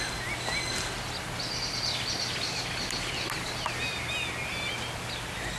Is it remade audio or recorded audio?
recorded